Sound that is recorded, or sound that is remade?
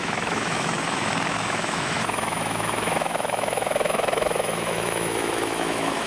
remade